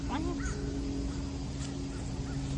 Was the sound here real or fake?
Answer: real